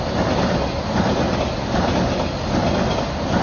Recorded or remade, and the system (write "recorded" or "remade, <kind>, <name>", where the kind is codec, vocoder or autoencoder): recorded